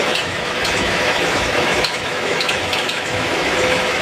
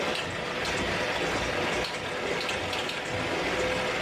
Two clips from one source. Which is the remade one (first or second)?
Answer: first